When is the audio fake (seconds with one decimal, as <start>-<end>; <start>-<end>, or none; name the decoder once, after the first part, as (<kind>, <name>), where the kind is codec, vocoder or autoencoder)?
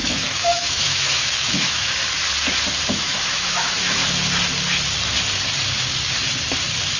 0.0-2.0 (autoencoder, DAC-VAE); 2.9-4.0